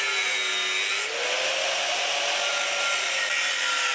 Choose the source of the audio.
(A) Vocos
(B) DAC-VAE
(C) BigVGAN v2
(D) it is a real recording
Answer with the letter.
D